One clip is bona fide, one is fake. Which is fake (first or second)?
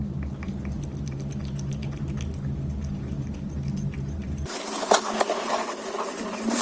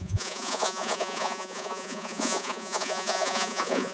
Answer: second